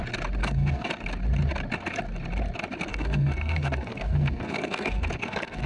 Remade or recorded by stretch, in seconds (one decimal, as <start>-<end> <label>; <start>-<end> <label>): 0.0-0.4 recorded; 0.4-0.9 remade; 0.9-2.9 recorded; 2.9-5.7 remade